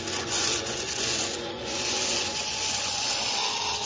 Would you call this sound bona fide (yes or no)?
no